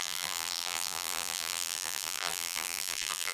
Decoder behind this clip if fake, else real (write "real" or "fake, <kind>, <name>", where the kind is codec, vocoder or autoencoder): fake, vocoder, BigVGAN v2